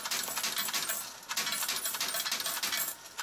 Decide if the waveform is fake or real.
real